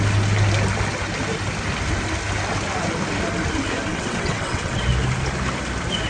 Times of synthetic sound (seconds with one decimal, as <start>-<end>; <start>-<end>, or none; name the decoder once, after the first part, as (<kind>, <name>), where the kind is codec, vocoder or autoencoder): 3.9-4.8 (vocoder, WaveNeXt)